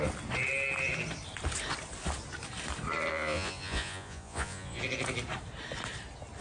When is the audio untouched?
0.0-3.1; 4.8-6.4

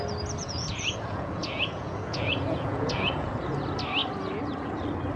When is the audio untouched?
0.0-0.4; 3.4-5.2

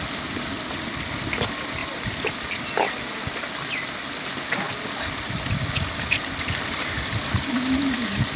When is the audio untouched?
0.0-8.4

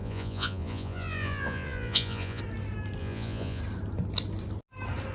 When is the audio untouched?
2.4-3.0; 3.6-5.1

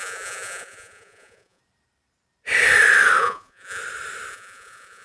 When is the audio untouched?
1.6-3.2; 3.8-4.3

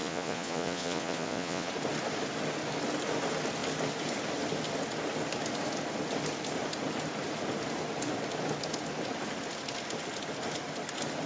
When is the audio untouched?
1.7-11.3

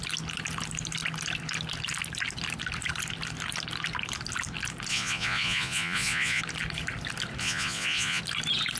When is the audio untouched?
0.0-4.9; 6.4-7.4; 8.2-8.8